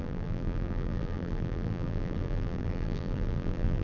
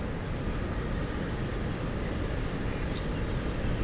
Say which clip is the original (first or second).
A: second